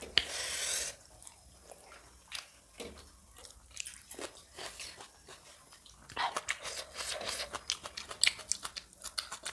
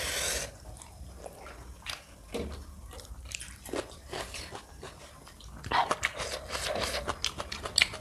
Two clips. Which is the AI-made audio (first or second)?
second